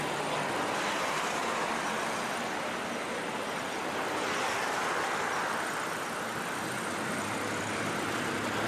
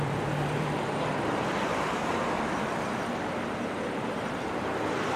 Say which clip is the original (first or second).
first